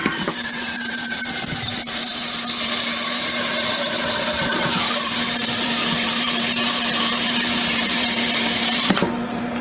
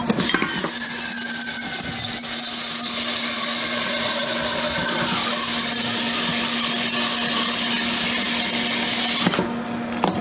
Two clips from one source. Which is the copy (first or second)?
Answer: first